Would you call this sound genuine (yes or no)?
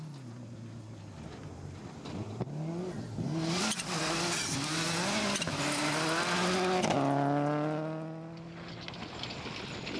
yes